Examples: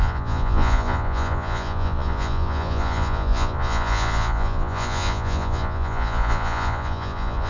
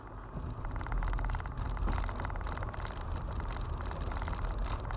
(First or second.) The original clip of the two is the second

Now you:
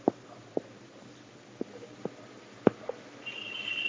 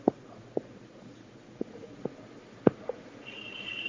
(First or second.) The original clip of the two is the first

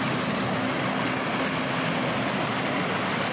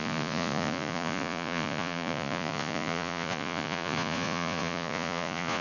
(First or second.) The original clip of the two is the first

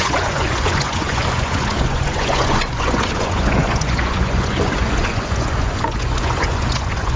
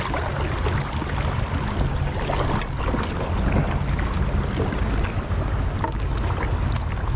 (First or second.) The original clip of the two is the second